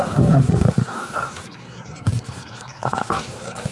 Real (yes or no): no